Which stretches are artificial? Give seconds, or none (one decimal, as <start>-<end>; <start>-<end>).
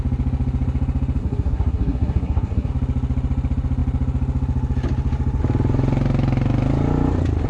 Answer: 1.2-2.7